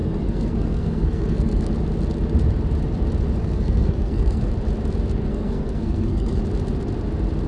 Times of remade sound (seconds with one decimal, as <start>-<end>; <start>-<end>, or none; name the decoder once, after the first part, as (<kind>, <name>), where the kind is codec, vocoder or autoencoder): 0.0-1.7 (codec, SNAC); 3.4-4.5; 5.3-6.4